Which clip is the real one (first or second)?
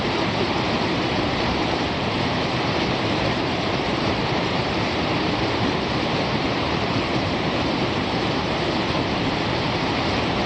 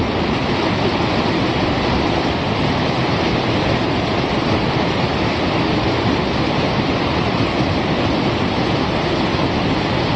second